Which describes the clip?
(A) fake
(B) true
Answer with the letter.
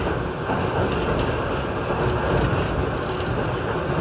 B